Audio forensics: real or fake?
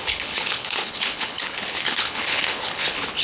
fake